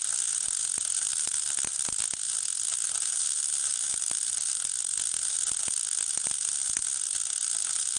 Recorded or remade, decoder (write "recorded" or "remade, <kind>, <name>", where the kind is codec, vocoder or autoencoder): recorded